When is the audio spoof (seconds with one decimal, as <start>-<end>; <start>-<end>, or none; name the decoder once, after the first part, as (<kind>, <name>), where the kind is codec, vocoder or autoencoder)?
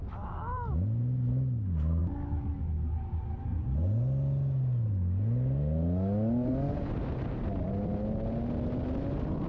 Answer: none